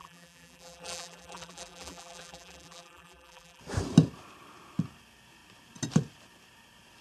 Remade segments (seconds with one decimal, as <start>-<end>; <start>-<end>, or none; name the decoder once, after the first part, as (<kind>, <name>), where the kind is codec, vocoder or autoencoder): 0.0-3.6 (vocoder, BigVGAN v2)